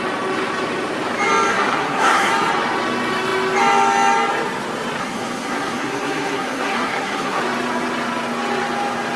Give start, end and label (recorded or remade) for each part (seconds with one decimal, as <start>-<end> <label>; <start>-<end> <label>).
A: 0.0-1.5 recorded; 1.5-2.3 remade; 2.3-5.0 recorded; 5.0-7.4 remade; 7.4-9.2 recorded